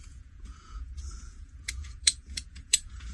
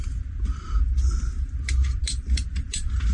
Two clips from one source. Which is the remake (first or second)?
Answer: first